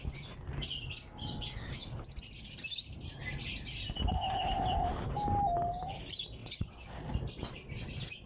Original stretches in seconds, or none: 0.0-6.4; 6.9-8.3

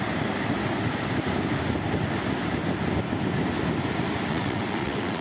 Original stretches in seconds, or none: 0.0-4.3

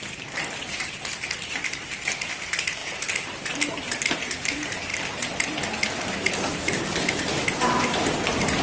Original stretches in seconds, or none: 0.0-8.6